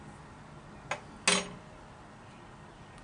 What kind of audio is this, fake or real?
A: real